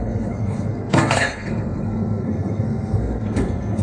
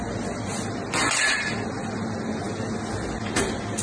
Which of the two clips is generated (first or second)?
first